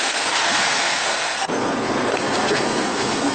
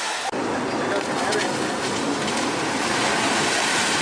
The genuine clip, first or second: second